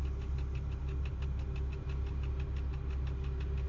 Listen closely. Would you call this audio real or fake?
real